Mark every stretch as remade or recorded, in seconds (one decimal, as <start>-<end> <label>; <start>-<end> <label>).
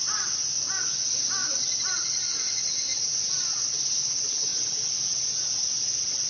0.0-6.3 recorded